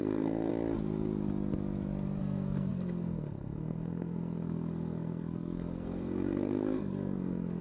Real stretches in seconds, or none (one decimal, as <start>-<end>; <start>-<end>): 0.5-2.2